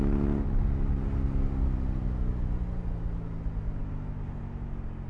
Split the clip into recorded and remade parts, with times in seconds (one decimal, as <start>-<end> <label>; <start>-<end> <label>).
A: 0.0-5.1 recorded